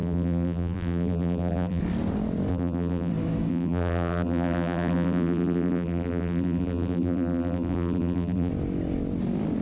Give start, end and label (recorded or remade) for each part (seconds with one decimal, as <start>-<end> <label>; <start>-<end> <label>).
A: 0.0-1.8 remade; 1.8-2.5 recorded; 2.5-3.1 remade; 3.1-3.5 recorded; 3.5-8.5 remade; 8.5-9.6 recorded

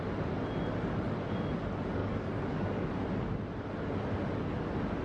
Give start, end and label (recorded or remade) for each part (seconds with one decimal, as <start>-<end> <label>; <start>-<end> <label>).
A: 0.0-2.0 recorded; 2.0-2.9 remade; 2.9-5.0 recorded